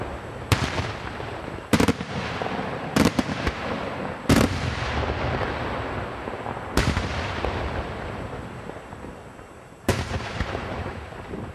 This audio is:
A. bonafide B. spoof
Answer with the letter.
B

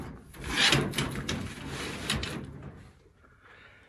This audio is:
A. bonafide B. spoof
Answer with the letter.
A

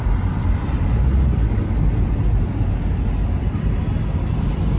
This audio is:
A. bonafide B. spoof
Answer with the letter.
A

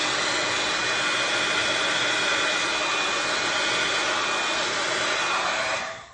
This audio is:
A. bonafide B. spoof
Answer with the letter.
A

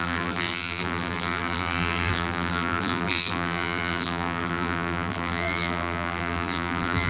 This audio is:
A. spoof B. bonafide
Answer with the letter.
A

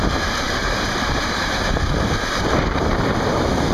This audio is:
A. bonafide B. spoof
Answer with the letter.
B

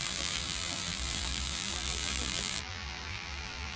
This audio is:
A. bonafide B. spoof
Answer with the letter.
B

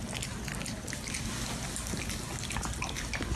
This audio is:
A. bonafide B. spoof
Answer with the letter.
A